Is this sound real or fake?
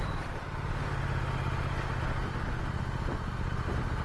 real